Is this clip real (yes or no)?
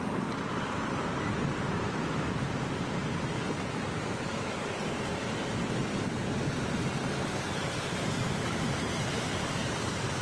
no